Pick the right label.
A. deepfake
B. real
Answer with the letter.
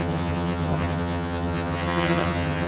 A